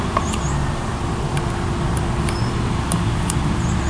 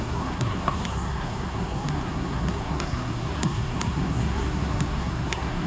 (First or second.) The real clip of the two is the first